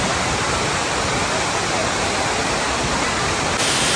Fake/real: real